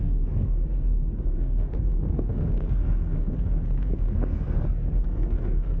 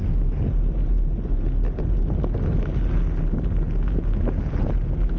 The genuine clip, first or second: second